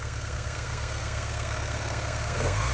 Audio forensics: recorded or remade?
remade